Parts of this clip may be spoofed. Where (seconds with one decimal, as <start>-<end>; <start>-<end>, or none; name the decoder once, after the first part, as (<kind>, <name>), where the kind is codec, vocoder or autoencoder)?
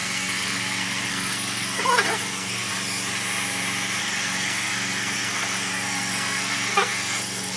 0.0-2.7 (codec, SNAC); 4.0-7.6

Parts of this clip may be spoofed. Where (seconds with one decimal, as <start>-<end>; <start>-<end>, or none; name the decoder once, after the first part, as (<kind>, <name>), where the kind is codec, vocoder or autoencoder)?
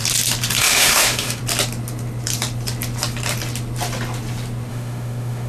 0.6-1.4 (autoencoder, DAC-VAE); 4.7-5.5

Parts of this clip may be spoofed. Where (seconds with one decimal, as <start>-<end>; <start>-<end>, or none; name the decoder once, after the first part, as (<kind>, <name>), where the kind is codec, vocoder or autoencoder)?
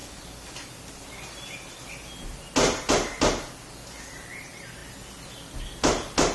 none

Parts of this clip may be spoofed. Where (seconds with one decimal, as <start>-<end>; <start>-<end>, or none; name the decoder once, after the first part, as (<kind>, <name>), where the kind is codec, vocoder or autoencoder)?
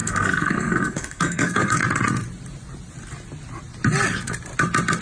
0.0-1.8 (codec, SNAC)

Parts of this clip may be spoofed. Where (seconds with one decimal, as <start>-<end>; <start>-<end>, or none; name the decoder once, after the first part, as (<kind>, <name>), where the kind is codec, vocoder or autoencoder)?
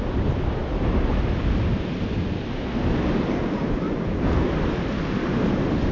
none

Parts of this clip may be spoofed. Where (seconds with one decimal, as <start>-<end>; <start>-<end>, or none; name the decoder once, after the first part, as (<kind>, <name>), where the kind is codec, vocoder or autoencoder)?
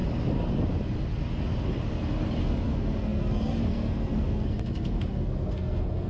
2.4-6.1 (codec, SNAC)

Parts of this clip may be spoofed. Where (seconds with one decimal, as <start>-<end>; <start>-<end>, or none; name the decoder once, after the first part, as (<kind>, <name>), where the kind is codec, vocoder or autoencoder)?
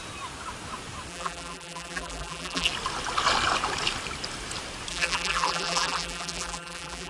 1.1-2.7 (vocoder, BigVGAN v2); 4.9-7.1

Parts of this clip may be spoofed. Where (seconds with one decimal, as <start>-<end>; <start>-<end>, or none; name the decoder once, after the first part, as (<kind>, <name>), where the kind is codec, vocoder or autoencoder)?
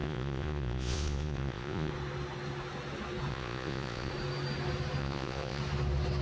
0.0-1.9 (vocoder, Vocos); 3.3-4.1; 5.0-5.6